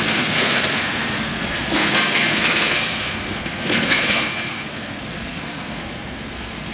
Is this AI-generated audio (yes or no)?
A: yes